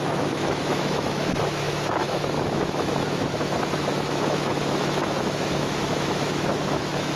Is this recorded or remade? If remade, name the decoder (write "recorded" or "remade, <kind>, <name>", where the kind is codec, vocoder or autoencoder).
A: remade, autoencoder, DAC-VAE